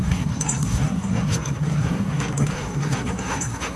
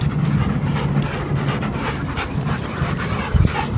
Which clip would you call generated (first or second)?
first